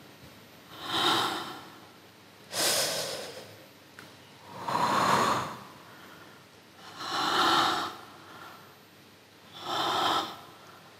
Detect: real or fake real